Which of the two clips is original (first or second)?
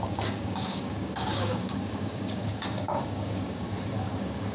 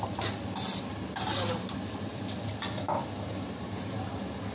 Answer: second